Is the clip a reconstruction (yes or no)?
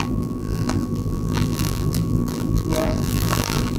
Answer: yes